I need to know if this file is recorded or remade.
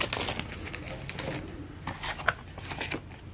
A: recorded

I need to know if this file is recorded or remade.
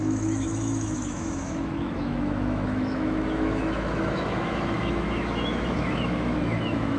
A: remade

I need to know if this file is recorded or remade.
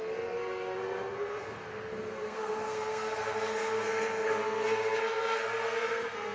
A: remade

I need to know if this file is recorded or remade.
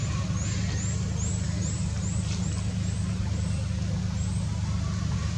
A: recorded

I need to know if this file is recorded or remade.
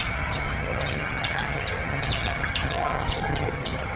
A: remade